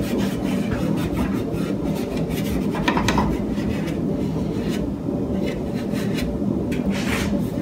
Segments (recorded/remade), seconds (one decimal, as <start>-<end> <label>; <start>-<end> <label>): 0.0-7.6 recorded